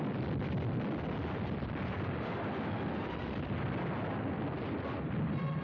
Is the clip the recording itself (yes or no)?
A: yes